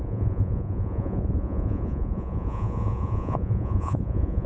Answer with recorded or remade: remade